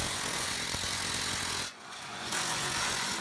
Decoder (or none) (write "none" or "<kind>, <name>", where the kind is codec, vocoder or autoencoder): vocoder, Vocos